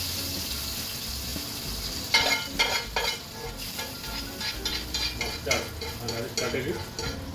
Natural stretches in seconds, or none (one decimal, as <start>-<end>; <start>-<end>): 0.0-7.3